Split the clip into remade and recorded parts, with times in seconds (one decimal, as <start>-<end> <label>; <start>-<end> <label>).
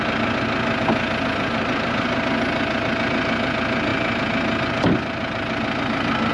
0.0-6.3 recorded